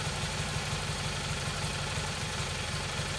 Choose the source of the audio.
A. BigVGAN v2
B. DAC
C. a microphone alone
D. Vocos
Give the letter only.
A